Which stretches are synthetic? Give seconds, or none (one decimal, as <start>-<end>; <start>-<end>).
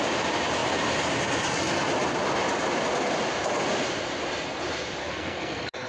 5.0-5.9